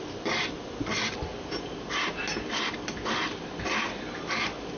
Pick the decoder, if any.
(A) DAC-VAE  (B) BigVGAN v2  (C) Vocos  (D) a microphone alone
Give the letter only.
D